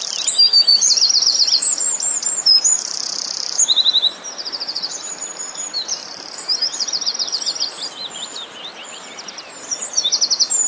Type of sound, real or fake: fake